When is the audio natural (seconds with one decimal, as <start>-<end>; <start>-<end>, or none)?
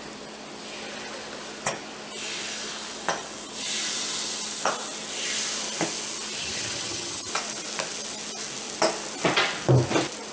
0.0-6.4; 7.3-10.3